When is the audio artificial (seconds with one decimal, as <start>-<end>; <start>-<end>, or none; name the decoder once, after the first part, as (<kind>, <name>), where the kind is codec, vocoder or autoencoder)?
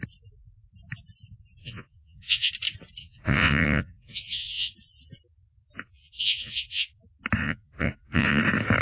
1.6-2.5 (vocoder, Vocos); 3.0-4.7; 5.8-7.0; 7.4-8.4